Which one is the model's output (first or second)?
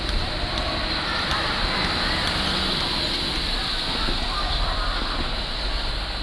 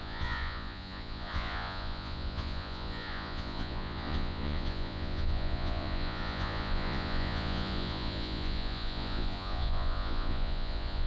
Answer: second